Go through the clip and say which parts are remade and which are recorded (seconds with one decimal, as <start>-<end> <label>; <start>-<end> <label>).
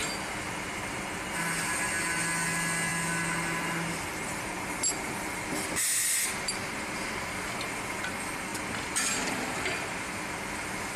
0.0-11.0 recorded